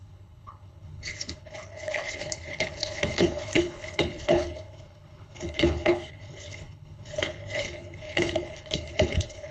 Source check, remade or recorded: remade